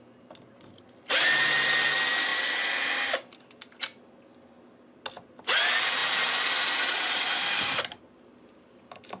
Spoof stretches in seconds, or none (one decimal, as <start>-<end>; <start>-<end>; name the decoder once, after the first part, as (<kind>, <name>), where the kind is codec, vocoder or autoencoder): none